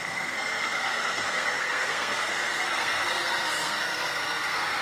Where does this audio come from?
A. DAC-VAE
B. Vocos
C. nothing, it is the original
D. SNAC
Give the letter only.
D